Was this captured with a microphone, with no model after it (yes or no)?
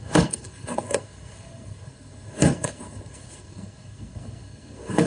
no